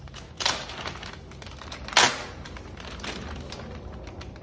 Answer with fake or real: real